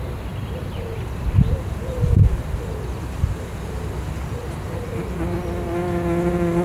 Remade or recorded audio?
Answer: recorded